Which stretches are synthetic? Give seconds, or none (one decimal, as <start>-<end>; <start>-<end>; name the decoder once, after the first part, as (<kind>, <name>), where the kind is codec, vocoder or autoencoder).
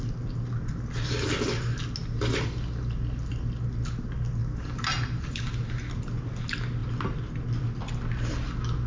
4.4-6.0 (vocoder, BigVGAN v2)